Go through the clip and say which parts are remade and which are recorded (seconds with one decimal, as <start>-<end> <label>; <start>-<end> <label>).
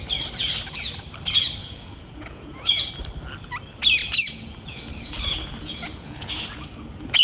0.0-1.6 recorded; 1.6-2.9 remade; 2.9-4.0 recorded; 4.0-6.8 remade; 6.8-7.2 recorded